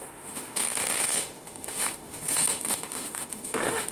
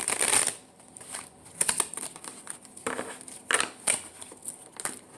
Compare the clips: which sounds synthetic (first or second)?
first